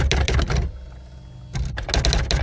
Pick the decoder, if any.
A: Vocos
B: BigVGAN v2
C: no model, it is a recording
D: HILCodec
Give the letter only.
C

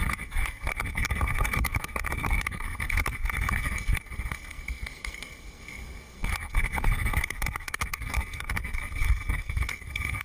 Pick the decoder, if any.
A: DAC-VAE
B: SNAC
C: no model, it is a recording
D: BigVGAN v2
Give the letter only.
B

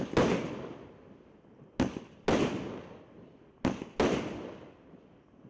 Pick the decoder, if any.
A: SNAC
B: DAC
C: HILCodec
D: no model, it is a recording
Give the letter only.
D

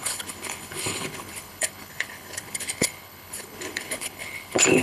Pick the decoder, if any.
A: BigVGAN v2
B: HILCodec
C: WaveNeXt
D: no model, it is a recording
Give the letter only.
B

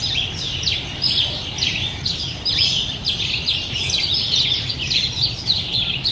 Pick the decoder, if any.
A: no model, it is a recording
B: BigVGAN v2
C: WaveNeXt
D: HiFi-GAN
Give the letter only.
A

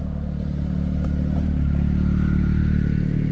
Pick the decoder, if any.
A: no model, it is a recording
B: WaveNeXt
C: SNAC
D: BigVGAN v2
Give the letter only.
A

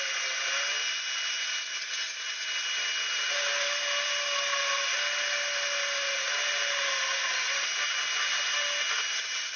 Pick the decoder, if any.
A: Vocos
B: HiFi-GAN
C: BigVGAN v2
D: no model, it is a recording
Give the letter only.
D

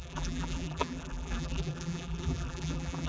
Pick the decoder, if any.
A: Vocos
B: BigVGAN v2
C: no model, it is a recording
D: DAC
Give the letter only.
B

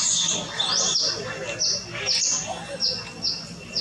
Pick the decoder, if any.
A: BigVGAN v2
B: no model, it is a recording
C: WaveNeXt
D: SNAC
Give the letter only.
B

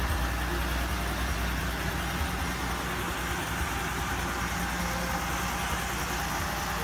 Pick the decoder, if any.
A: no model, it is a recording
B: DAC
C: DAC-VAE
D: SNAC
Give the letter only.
A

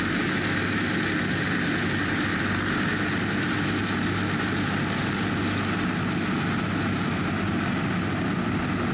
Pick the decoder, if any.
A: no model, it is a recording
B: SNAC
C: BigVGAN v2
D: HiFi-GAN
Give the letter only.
A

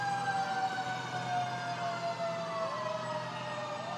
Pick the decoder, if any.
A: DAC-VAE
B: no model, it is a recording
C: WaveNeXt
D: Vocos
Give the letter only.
B